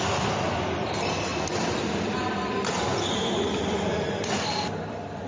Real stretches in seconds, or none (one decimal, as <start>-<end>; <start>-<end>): 1.3-1.8; 2.9-3.5